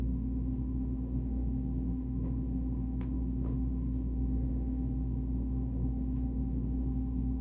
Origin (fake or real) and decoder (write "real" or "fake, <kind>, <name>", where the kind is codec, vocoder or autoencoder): fake, autoencoder, DAC-VAE